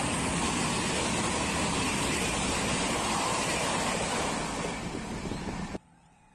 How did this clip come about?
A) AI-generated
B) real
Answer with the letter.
B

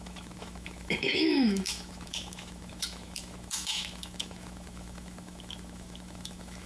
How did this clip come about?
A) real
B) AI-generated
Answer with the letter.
B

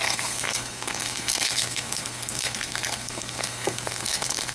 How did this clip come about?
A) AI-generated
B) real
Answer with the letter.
A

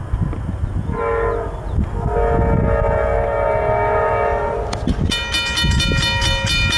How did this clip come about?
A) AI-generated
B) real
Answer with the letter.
B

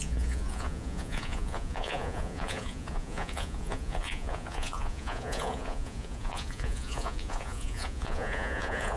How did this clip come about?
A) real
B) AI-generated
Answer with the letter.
B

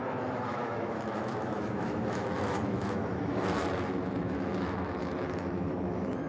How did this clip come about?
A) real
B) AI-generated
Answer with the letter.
B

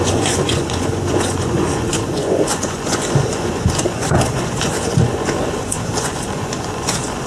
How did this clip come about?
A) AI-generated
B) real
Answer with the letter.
A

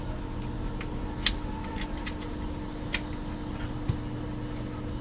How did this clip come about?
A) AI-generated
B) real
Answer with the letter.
B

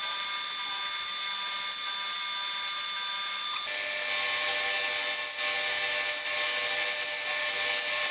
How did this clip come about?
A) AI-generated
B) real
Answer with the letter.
B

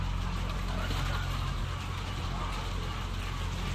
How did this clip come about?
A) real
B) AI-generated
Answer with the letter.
A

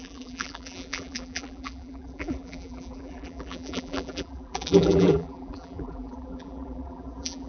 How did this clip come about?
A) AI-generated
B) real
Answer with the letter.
A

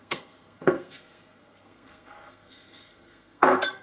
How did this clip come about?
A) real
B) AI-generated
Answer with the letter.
B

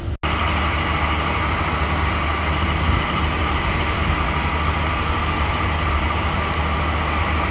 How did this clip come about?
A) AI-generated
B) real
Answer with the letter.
B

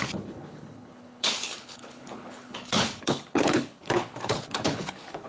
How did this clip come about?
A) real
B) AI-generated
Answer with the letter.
B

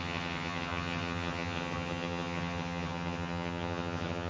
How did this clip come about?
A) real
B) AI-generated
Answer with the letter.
B